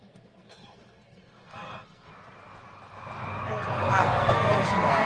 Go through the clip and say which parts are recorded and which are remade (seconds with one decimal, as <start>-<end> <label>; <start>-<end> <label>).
0.0-2.1 remade; 2.1-3.5 recorded; 3.5-5.1 remade